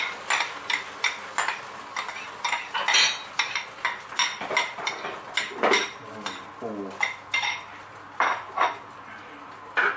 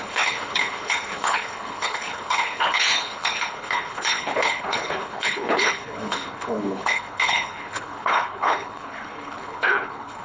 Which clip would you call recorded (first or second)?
first